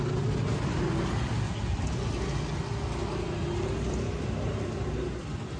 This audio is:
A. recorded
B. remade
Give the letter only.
A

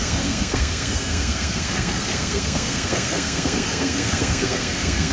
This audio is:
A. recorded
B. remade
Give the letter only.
B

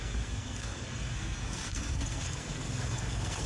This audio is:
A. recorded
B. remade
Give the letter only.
B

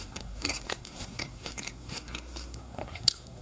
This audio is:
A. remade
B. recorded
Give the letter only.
A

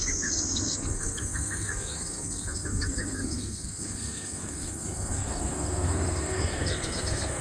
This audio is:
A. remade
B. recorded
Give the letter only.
A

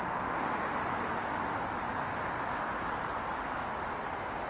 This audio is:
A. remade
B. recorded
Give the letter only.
B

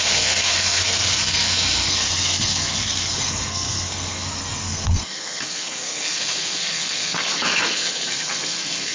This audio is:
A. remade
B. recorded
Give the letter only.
A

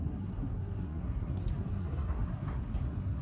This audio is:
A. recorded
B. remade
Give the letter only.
B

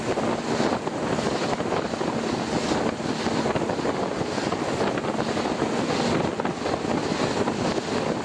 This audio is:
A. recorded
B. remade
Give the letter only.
A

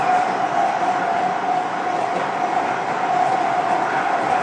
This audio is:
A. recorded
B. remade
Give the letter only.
A